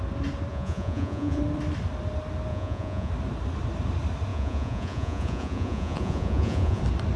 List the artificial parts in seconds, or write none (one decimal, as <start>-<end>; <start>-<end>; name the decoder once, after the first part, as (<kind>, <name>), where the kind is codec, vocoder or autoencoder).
0.5-1.4 (vocoder, Vocos); 2.5-3.1; 4.3-6.8